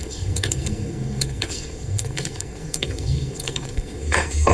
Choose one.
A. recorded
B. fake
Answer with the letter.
B